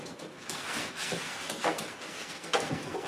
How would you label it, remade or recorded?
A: remade